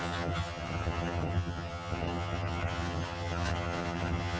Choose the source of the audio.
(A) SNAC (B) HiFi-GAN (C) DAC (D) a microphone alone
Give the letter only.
B